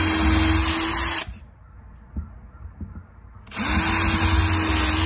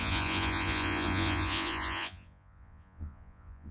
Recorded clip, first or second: first